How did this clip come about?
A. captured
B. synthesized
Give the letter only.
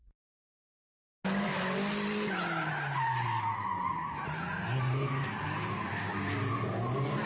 A